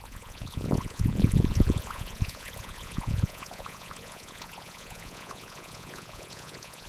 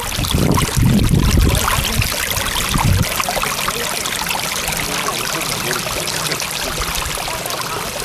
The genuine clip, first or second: second